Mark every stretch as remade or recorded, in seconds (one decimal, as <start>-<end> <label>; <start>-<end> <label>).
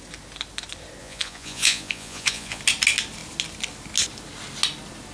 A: 0.0-1.0 recorded; 1.0-2.6 remade; 2.6-5.1 recorded